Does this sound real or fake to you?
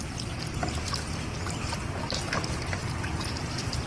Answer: real